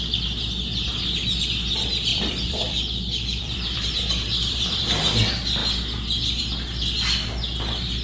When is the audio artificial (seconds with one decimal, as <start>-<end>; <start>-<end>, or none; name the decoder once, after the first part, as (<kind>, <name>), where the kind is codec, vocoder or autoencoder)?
2.1-4.8 (vocoder, BigVGAN v2)

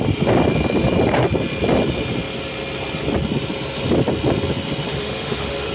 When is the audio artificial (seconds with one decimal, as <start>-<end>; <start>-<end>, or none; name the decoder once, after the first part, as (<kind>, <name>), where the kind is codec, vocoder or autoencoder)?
4.9-5.7 (autoencoder, DAC-VAE)

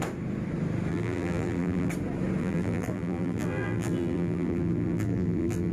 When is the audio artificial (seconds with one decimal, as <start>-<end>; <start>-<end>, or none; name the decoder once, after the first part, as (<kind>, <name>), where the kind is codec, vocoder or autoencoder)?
0.9-1.9 (vocoder, BigVGAN v2); 2.4-5.7

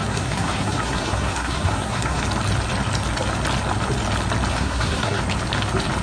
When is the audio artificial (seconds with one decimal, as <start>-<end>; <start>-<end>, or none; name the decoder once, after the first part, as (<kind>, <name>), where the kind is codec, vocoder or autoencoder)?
0.0-2.2 (codec, SNAC); 4.5-5.2

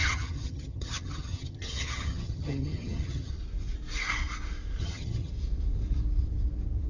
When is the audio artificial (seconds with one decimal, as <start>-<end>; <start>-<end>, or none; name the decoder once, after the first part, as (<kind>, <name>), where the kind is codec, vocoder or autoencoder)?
0.0-3.3 (vocoder, HiFi-GAN); 4.8-5.3